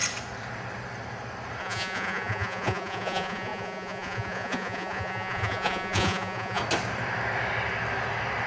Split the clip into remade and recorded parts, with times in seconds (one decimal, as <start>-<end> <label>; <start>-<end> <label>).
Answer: 0.0-1.6 recorded; 1.6-6.6 remade; 6.6-8.5 recorded